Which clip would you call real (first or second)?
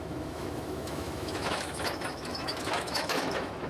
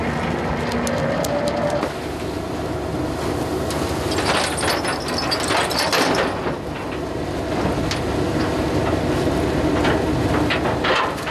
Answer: second